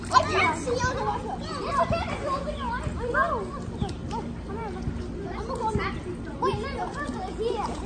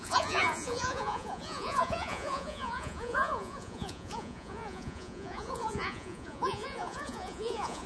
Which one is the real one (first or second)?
first